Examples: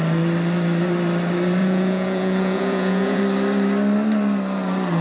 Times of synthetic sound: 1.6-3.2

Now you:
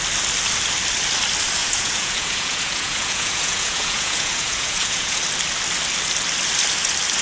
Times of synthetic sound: 1.6-5.2

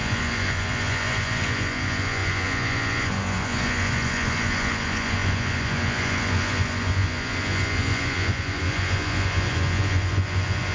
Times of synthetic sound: 0.0-10.7

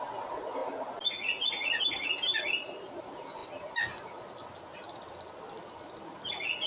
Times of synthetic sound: none